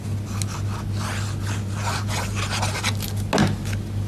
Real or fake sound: real